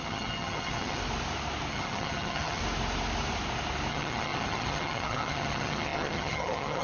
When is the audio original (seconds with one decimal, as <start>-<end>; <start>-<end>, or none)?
1.0-1.7; 2.6-3.9